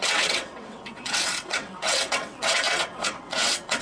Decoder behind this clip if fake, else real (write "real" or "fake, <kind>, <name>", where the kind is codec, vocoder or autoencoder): fake, vocoder, WaveNeXt